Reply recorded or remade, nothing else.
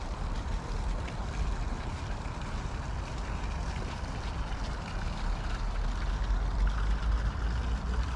recorded